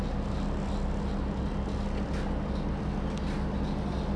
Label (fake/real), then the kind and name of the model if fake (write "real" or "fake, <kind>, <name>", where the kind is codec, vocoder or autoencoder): real